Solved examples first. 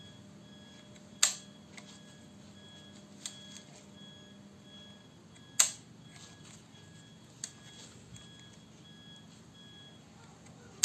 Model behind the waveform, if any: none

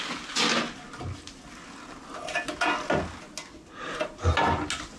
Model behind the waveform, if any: none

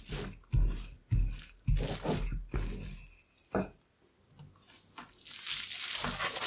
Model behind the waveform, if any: none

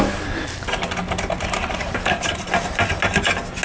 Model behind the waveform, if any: none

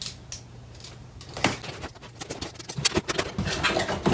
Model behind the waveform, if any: none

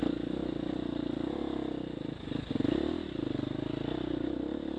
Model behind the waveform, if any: none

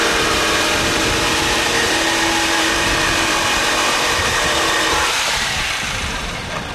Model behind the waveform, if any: vocoder, BigVGAN v2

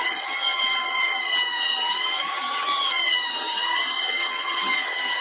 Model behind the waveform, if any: vocoder, HiFi-GAN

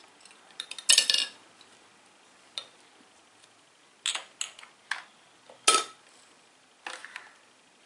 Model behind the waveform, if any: none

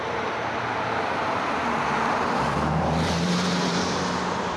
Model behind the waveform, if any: vocoder, BigVGAN v2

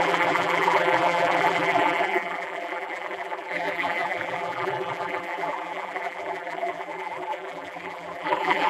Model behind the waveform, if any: vocoder, BigVGAN v2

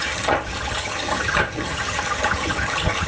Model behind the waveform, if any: vocoder, HiFi-GAN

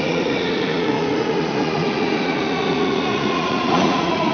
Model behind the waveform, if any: vocoder, Vocos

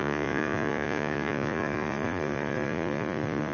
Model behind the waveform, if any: vocoder, Vocos